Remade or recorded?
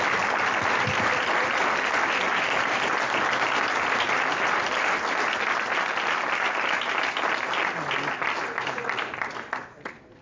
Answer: recorded